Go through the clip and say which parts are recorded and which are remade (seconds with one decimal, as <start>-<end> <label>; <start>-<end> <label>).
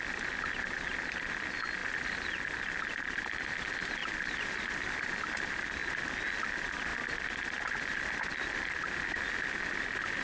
0.0-10.2 recorded